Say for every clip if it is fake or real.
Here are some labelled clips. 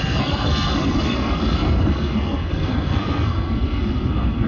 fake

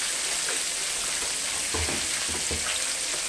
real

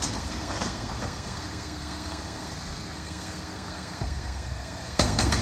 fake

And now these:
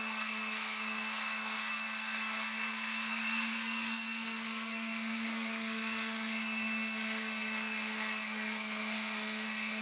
fake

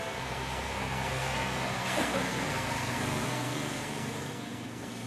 fake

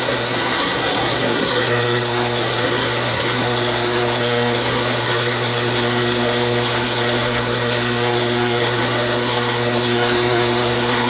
fake